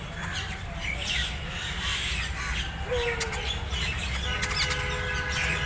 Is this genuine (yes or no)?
yes